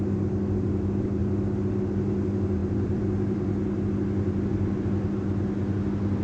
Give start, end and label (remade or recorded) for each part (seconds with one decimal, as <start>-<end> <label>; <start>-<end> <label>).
0.0-2.6 recorded; 2.6-3.5 remade; 3.5-6.2 recorded